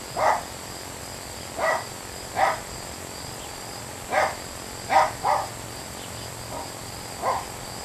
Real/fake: real